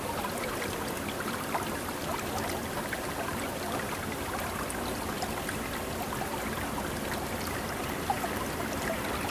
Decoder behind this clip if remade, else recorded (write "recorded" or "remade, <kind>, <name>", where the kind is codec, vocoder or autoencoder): recorded